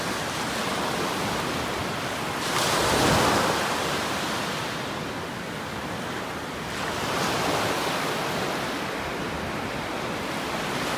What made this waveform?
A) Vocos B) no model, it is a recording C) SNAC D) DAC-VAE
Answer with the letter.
B